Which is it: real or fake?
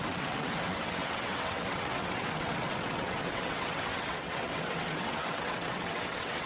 fake